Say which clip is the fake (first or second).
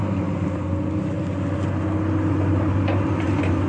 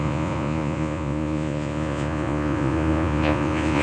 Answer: second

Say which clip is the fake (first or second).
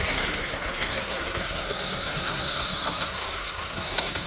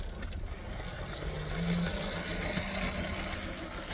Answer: first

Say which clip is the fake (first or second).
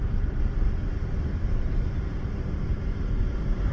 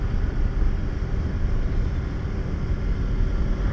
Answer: first